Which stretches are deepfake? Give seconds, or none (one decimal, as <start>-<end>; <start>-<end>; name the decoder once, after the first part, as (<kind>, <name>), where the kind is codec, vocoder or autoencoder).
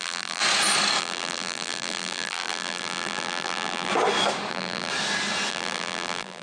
0.0-0.4 (vocoder, BigVGAN v2); 1.0-3.9; 4.5-4.9; 5.5-6.4